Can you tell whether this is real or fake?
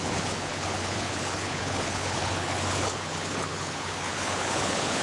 fake